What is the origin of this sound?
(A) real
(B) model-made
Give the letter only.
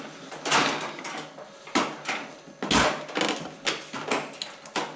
A